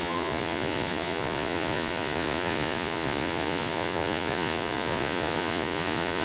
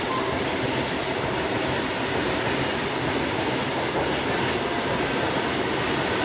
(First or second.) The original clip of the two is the second